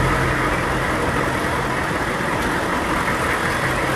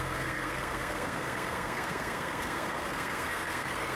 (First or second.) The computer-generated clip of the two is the second